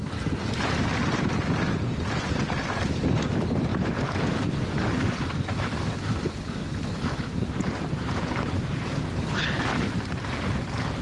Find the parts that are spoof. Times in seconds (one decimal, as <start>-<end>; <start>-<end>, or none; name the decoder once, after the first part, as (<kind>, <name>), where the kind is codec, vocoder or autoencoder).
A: 3.7-4.5 (vocoder, BigVGAN v2); 6.6-8.8; 9.7-10.6